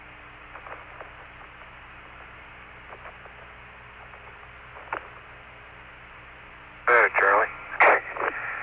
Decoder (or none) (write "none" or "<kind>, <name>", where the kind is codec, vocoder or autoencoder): none